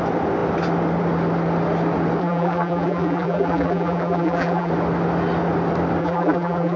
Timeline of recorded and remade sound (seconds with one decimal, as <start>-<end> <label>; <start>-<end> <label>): 0.0-2.2 recorded; 2.2-4.7 remade; 4.7-6.0 recorded; 6.0-6.8 remade